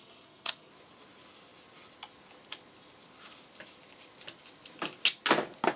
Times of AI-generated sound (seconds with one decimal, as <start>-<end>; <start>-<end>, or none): 0.0-0.7